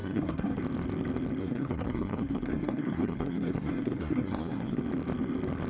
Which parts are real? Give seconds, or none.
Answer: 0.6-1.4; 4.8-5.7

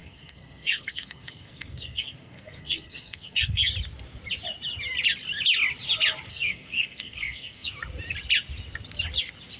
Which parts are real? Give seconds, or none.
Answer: 3.7-6.3; 7.7-9.6